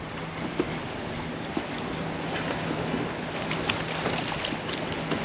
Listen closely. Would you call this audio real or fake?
real